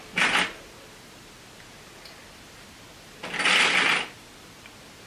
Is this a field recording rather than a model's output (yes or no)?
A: yes